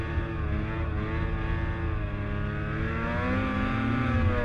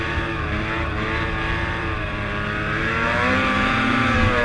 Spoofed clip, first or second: second